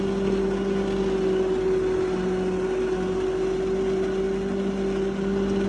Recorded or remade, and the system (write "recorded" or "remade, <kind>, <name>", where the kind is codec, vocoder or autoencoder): recorded